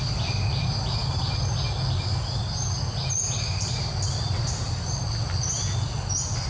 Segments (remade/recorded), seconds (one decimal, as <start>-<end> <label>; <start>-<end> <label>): 0.0-6.5 recorded

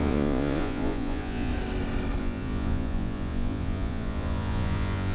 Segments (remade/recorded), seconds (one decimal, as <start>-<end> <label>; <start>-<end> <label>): 0.0-1.5 remade; 1.5-2.2 recorded; 2.2-5.1 remade